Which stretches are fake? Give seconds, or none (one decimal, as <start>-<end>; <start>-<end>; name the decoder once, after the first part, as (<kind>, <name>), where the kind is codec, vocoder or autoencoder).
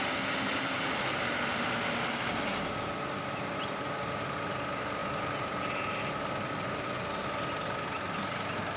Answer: none